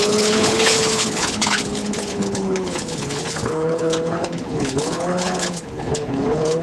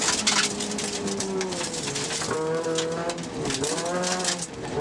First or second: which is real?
second